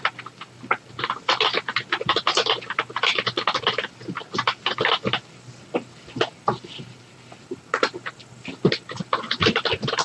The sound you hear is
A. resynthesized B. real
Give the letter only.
B